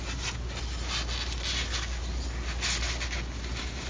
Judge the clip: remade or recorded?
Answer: recorded